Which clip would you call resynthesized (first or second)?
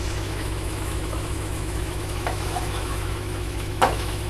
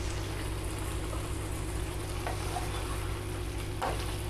first